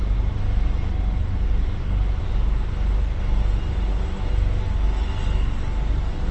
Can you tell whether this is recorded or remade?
recorded